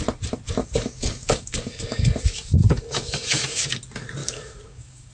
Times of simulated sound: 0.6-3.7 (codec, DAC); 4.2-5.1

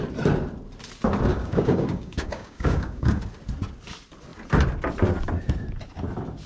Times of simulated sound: 1.3-3.2 (codec, DAC)

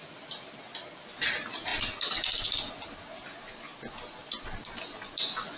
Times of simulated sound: none

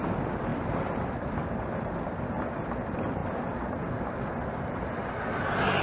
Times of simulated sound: none